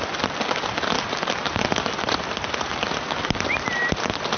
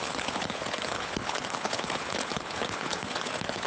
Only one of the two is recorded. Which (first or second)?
first